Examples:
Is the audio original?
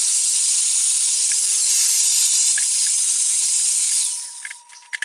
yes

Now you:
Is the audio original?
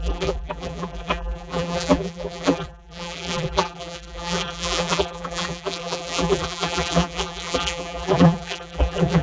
no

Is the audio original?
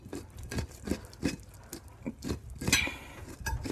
yes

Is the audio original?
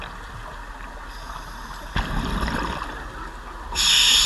yes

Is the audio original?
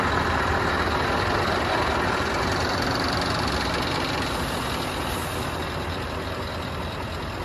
yes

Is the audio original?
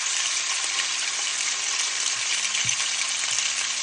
no